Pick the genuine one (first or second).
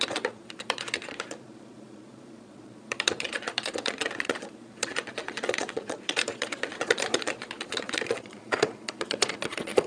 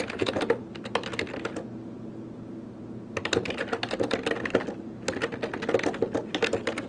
second